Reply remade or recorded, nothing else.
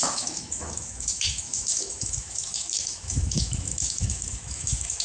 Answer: remade